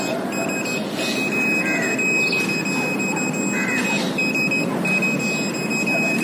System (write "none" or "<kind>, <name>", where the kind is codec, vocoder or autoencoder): none